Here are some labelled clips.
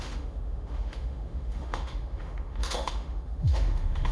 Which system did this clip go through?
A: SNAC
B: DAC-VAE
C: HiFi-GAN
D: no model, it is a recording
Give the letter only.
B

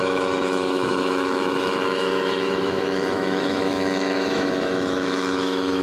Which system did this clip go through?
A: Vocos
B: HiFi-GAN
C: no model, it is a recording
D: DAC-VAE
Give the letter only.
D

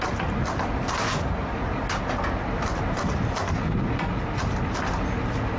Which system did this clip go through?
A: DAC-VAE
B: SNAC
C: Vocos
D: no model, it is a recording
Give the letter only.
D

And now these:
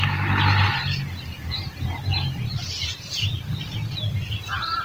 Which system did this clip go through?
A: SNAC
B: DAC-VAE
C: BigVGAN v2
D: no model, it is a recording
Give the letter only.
D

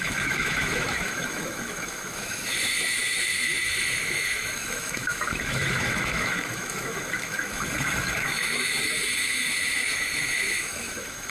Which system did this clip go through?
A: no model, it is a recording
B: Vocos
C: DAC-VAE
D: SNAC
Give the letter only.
C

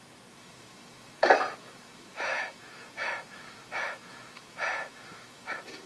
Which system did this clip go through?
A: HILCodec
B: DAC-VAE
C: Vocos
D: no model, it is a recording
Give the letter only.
B